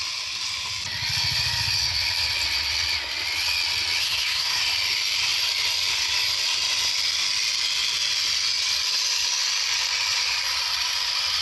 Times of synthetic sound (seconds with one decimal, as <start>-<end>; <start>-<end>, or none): 4.0-4.6